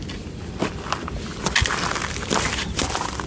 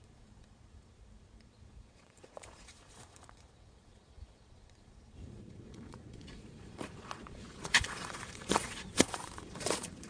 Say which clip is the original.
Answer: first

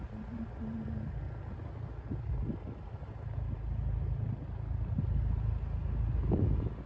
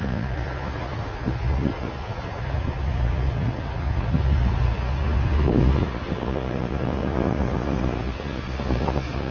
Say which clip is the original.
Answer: first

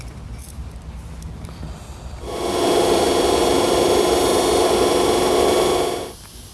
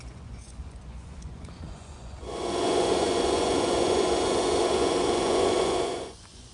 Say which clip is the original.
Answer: first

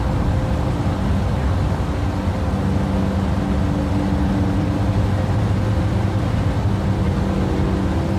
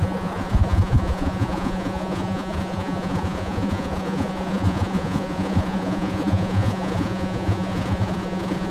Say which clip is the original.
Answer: first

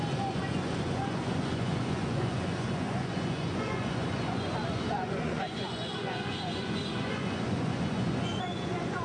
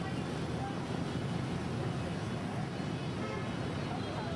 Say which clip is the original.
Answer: second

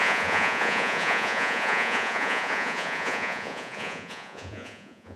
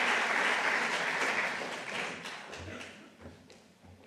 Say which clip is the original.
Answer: second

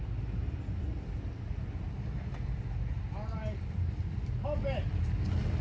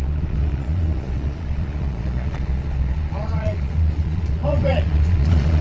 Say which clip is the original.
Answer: first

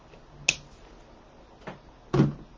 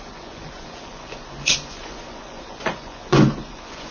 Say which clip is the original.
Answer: first